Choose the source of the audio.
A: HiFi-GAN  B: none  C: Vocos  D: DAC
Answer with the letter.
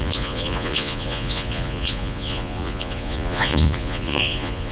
C